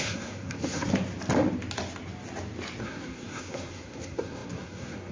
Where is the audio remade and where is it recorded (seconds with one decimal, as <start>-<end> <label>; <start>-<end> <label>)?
0.0-0.9 remade; 0.9-2.8 recorded; 2.8-5.1 remade